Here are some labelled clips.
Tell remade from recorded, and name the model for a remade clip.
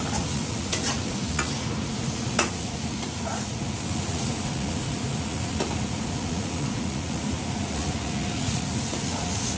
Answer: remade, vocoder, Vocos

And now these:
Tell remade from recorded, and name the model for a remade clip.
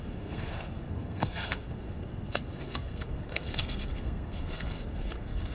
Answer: remade, codec, SNAC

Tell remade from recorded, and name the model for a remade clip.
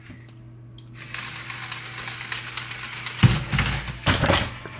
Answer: recorded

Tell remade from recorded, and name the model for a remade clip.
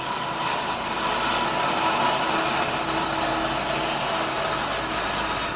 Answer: recorded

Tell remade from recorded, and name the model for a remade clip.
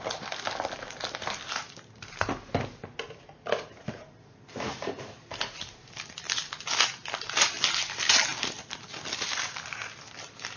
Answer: recorded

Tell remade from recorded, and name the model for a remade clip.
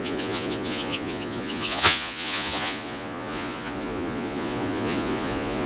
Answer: remade, vocoder, Vocos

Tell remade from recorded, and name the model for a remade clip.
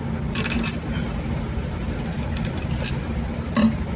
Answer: recorded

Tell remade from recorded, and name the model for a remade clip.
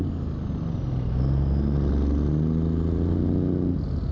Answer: recorded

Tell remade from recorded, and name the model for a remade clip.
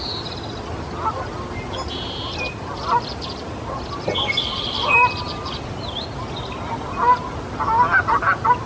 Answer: recorded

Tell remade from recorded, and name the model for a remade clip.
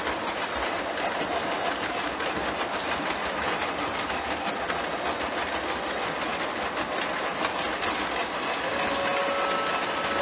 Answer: recorded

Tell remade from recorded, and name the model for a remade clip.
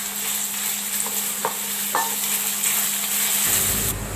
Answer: recorded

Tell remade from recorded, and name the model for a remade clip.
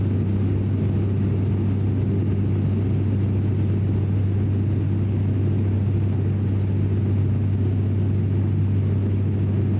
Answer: recorded